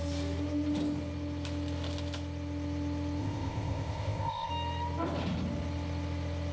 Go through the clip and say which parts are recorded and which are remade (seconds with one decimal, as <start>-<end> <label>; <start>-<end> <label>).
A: 0.0-3.2 recorded; 3.2-4.5 remade; 4.5-6.5 recorded